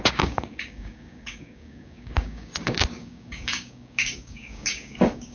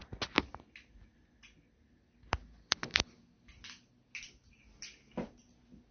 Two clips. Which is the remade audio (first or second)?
first